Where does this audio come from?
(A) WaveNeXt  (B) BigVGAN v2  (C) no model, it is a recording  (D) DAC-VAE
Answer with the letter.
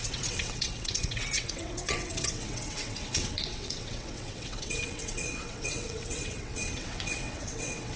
A